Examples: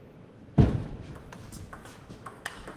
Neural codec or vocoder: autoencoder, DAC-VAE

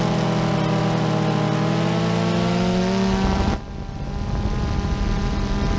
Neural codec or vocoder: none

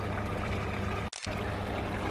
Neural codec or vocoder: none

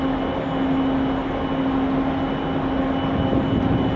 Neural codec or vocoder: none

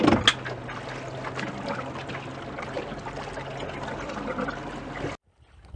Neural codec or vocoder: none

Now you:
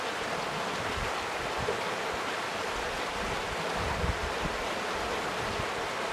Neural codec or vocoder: none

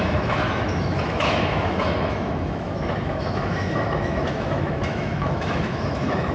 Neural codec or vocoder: autoencoder, DAC-VAE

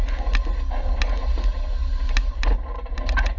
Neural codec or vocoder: none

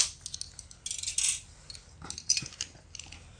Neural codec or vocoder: none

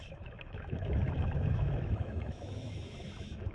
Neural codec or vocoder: autoencoder, DAC-VAE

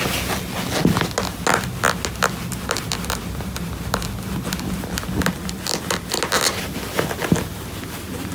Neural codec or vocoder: none